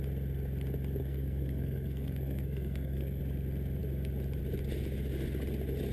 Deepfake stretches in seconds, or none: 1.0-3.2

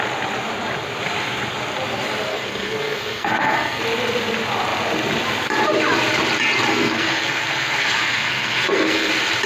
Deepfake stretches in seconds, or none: 2.3-3.8; 6.7-9.1

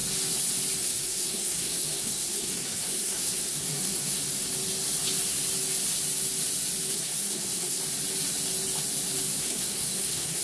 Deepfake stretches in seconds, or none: 0.8-4.2; 6.9-7.8; 9.4-10.4

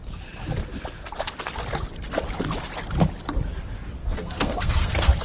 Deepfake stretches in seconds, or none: 4.0-5.2

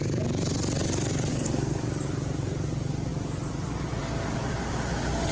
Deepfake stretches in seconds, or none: 1.3-1.8